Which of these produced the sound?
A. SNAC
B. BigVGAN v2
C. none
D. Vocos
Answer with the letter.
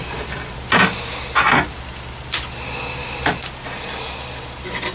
C